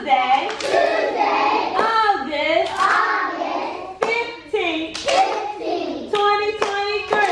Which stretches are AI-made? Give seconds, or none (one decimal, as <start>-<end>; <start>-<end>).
0.0-5.0; 5.8-7.3